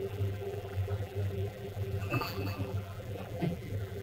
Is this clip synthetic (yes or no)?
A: yes